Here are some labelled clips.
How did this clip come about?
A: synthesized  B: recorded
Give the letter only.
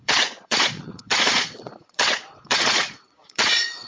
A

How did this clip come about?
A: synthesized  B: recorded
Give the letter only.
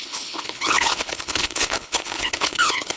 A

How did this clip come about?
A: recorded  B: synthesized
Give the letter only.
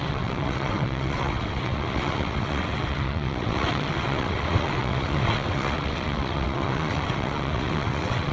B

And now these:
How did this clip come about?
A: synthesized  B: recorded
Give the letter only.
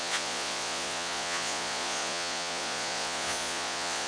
A